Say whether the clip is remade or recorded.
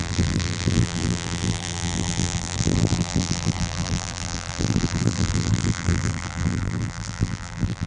remade